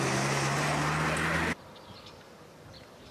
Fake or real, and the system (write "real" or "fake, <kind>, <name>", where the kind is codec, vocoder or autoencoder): real